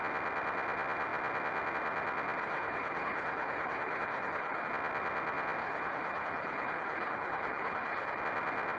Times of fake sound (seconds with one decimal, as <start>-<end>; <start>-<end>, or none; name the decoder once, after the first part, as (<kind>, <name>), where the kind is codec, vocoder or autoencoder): 2.4-4.7 (codec, HILCodec); 5.6-8.2